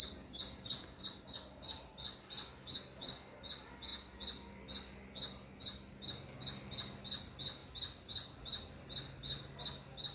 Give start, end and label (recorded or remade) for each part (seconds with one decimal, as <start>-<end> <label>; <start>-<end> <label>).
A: 0.0-2.5 recorded; 2.5-3.1 remade; 3.1-10.1 recorded